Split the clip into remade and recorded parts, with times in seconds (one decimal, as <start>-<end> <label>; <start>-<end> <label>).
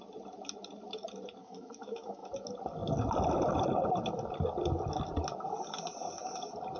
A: 0.0-1.4 recorded; 1.4-2.3 remade; 2.3-6.8 recorded